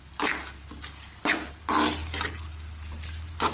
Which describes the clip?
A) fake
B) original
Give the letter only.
B